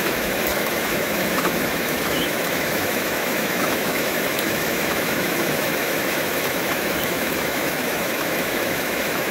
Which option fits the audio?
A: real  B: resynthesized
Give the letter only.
B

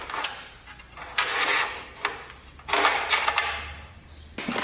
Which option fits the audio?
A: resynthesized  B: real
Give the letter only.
B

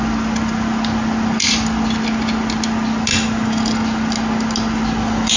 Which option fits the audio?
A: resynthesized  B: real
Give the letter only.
B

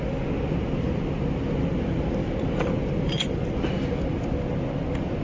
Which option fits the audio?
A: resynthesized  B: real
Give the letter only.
B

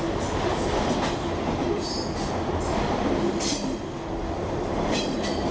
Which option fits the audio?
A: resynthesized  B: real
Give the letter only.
B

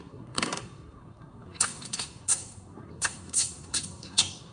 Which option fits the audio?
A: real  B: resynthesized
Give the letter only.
B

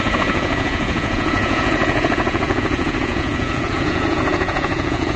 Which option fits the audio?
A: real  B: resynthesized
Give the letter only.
B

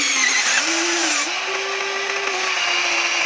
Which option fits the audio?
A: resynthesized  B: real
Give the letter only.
B